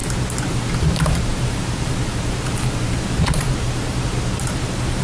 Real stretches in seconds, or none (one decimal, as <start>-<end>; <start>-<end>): 0.0-0.5